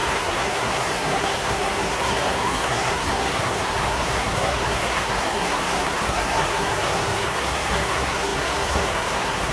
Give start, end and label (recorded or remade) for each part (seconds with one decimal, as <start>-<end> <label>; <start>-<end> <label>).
0.0-9.5 remade